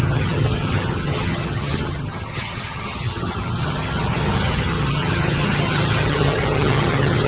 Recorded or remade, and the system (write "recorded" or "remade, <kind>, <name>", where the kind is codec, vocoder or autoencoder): remade, vocoder, HiFi-GAN